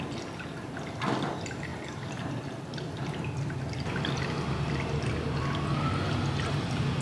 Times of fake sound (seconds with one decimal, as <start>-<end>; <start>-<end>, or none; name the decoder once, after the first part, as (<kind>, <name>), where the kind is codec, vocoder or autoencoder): 1.7-3.6 (vocoder, BigVGAN v2)